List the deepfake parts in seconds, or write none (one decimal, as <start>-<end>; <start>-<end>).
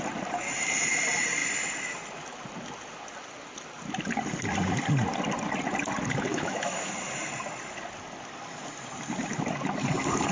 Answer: 6.3-6.9